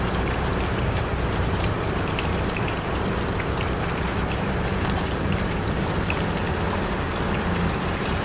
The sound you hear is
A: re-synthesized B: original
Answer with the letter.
A